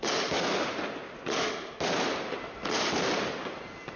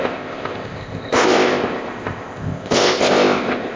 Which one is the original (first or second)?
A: first